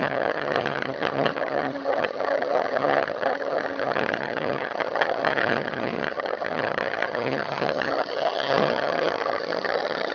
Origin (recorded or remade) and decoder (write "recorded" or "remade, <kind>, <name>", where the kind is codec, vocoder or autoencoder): remade, vocoder, HiFi-GAN